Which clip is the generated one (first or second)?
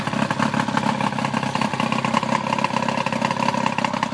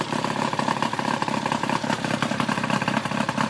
second